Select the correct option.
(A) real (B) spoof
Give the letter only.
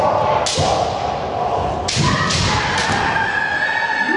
A